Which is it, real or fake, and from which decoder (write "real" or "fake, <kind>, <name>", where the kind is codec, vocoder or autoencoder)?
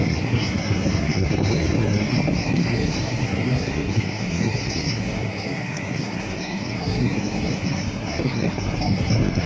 fake, codec, SNAC